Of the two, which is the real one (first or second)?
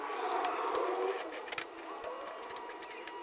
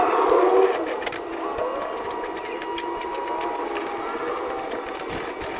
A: second